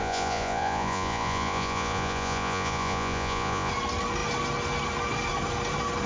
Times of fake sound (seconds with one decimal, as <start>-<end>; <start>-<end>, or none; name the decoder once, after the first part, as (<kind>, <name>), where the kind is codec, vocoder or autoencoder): 0.0-3.7 (vocoder, Vocos)